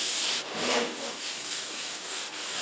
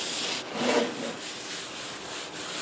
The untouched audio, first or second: second